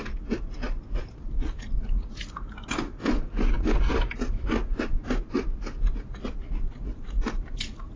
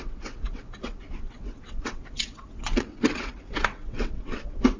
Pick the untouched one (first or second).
first